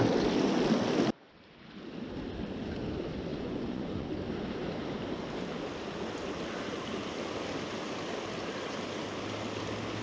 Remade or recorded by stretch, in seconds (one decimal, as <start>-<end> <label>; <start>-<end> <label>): 0.0-3.3 recorded; 3.3-4.1 remade; 4.1-10.0 recorded